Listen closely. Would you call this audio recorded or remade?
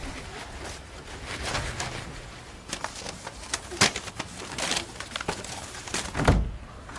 recorded